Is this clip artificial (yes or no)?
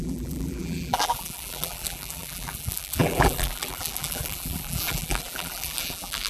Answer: yes